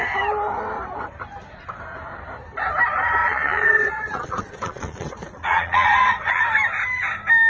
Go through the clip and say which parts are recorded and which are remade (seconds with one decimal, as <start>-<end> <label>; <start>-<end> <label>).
0.0-3.2 recorded; 3.2-6.4 remade; 6.4-7.5 recorded